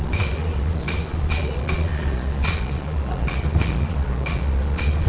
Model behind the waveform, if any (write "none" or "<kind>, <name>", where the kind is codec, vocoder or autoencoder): vocoder, Vocos